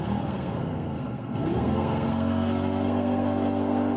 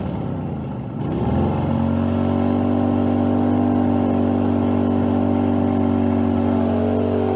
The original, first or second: second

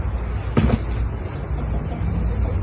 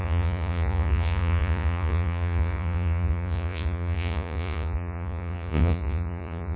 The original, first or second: first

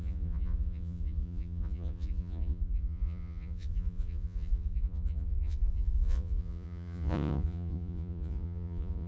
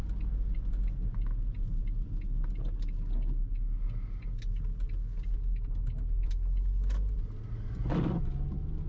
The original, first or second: second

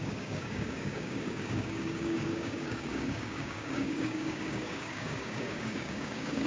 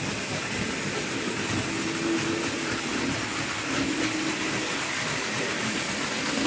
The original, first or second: second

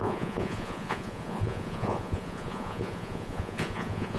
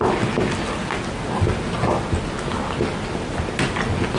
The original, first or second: second